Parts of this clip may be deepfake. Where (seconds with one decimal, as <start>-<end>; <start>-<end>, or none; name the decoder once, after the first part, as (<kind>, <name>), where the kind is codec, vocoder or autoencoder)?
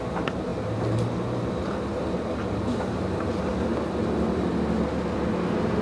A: none